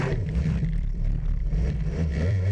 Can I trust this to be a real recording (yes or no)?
no